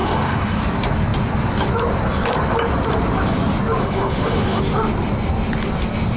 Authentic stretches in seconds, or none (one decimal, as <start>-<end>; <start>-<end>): 0.6-3.8; 4.6-6.2